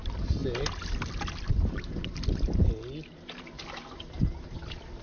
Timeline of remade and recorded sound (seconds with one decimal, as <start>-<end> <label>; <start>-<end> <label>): 0.0-5.0 recorded